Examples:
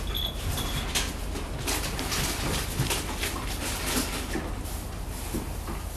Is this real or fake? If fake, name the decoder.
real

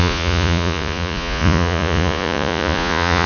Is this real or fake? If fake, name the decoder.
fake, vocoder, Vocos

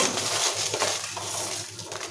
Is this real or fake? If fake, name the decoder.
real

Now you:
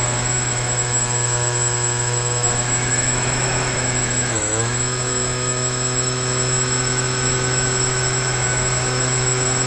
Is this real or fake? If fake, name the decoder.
fake, autoencoder, DAC-VAE